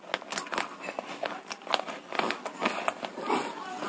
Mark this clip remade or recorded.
recorded